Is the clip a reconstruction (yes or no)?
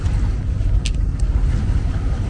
no